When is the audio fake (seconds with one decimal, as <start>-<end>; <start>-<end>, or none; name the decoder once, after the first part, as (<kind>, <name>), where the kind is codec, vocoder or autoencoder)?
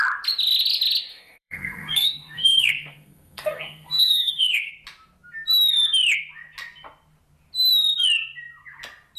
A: 1.1-4.7 (codec, SNAC)